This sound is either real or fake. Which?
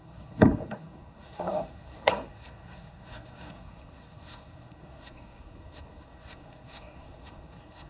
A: fake